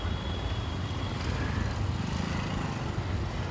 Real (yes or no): yes